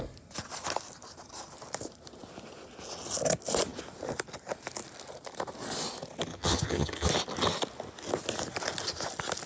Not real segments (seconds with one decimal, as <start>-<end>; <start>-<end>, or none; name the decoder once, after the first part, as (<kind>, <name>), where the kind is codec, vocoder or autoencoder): 6.3-7.1 (vocoder, HiFi-GAN)